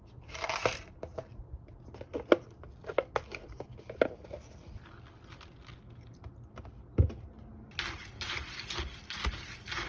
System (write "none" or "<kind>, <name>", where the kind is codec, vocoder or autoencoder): none